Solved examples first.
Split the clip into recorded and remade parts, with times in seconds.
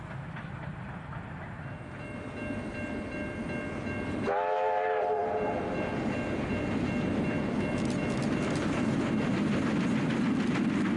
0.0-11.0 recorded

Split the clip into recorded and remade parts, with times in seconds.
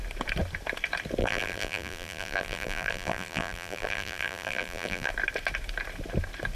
0.0-1.2 recorded; 1.2-5.1 remade; 5.1-6.5 recorded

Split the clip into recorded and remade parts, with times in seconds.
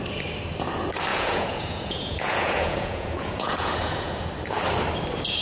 0.0-1.1 recorded; 1.1-4.3 remade; 4.3-5.4 recorded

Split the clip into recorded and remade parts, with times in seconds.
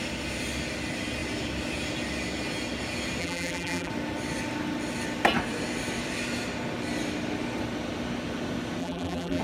0.0-3.2 recorded; 3.2-3.9 remade; 3.9-8.8 recorded; 8.8-9.4 remade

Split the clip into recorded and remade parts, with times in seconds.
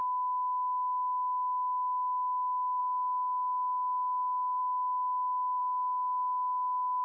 0.0-2.8 recorded; 2.8-4.6 remade; 4.6-5.6 recorded; 5.6-7.0 remade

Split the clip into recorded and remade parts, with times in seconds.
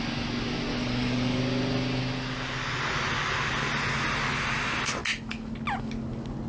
0.0-0.7 recorded; 0.7-1.4 remade; 1.4-6.5 recorded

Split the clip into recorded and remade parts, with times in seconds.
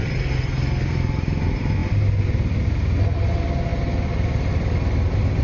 0.0-5.4 recorded